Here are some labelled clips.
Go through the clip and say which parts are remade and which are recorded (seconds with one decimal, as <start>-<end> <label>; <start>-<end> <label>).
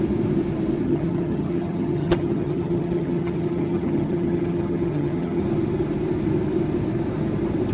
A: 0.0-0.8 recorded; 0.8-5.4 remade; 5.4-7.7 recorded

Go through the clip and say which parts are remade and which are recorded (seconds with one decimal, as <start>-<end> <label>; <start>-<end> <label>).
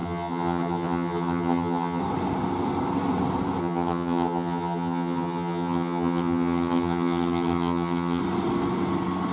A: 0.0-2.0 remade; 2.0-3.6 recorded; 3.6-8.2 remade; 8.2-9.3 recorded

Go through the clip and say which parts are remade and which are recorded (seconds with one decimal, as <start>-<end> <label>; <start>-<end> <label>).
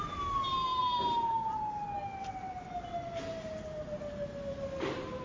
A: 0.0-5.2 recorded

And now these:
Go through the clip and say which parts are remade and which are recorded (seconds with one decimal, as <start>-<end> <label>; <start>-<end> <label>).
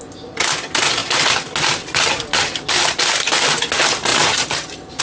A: 0.0-5.0 recorded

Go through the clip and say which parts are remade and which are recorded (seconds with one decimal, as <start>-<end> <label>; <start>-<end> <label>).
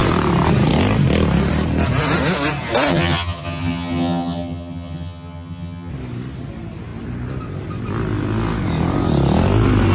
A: 0.0-2.9 recorded; 2.9-5.9 remade; 5.9-9.9 recorded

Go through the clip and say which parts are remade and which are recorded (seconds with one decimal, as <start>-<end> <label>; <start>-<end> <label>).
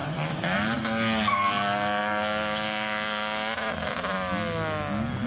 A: 0.0-5.3 recorded